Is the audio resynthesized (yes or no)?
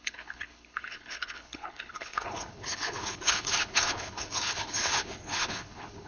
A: yes